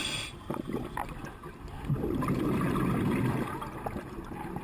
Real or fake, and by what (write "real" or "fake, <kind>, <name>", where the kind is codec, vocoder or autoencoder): real